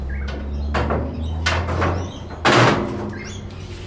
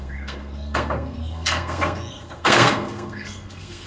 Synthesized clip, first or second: second